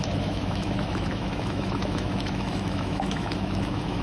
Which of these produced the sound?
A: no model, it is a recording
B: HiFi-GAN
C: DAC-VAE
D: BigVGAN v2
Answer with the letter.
C